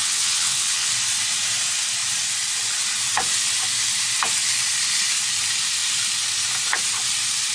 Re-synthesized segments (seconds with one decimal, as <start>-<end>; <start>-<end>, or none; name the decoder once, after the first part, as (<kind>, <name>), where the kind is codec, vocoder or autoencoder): 0.0-0.9 (vocoder, WaveNeXt)